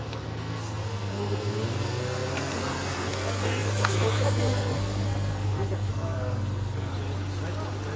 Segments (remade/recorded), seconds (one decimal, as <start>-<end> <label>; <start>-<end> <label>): 0.0-6.9 remade; 6.9-8.0 recorded